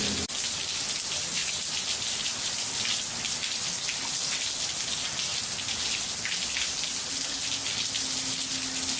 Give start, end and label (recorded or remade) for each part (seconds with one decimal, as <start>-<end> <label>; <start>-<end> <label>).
0.0-1.4 recorded; 1.4-2.6 remade; 2.6-9.0 recorded